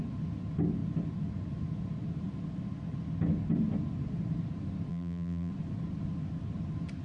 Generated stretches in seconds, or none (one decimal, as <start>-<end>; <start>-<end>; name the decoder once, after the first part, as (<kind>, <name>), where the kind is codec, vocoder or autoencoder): 4.9-5.5 (vocoder, BigVGAN v2)